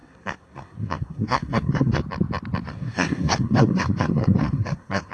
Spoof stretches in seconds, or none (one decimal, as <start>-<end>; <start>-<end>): 0.0-2.0; 2.7-5.1